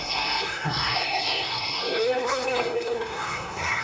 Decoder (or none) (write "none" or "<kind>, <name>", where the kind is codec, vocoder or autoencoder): codec, SNAC